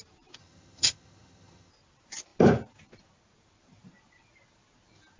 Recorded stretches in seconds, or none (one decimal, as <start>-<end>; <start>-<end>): 0.0-0.4; 1.7-5.2